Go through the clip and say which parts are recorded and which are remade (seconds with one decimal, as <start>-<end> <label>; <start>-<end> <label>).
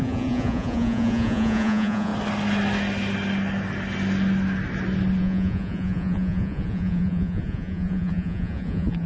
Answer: 0.0-2.1 remade; 2.1-5.2 recorded; 5.2-9.1 remade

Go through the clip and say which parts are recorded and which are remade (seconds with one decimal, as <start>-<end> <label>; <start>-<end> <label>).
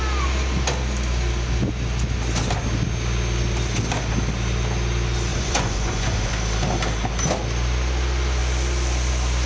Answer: 0.0-5.3 recorded; 5.3-6.3 remade; 6.3-9.5 recorded